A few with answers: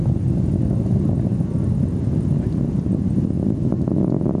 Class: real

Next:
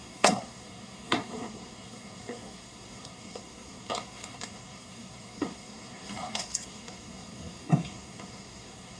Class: fake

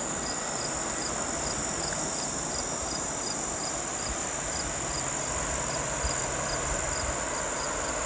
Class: real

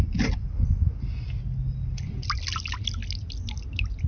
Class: real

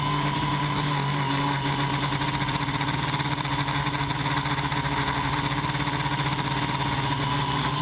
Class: real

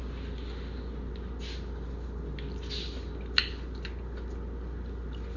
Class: real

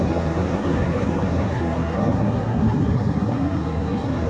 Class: fake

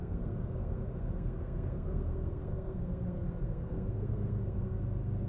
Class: fake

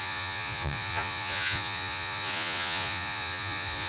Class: fake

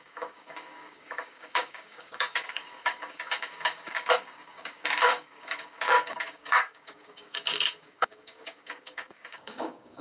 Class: fake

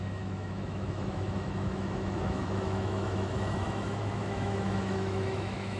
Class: fake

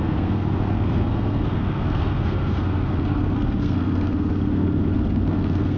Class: fake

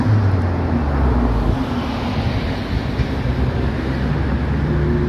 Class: real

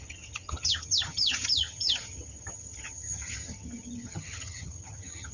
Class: fake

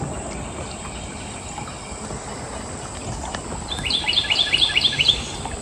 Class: real